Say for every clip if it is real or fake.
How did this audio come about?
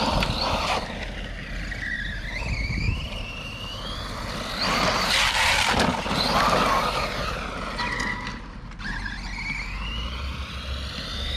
real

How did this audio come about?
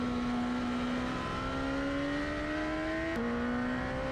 real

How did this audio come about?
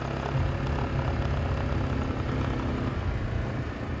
real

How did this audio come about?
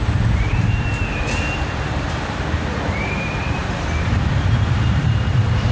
fake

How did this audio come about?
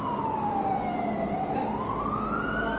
real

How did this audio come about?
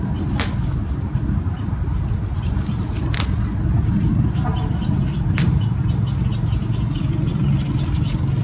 real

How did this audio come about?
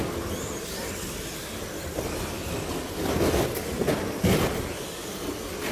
real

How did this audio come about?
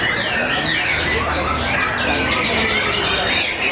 real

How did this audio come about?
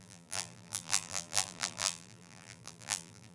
fake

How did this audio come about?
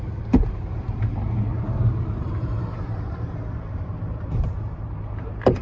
fake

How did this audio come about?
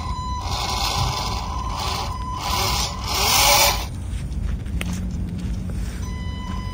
fake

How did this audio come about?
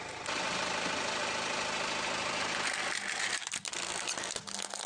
real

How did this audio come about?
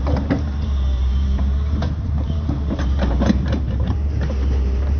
fake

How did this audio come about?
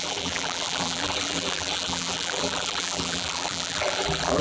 fake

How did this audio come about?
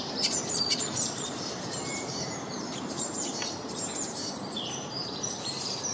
fake